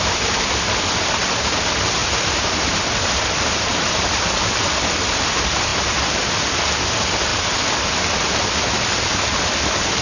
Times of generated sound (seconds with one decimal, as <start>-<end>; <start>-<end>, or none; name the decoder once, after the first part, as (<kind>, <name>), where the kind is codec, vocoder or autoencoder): none